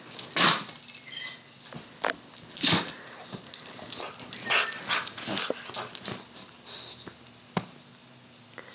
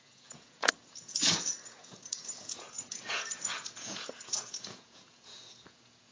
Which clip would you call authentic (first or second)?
first